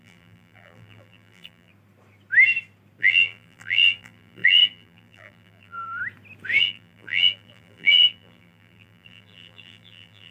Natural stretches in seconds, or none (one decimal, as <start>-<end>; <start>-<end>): 1.7-3.0; 6.0-6.6